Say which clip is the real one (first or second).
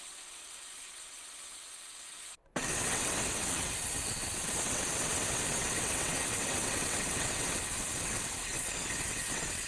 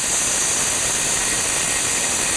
second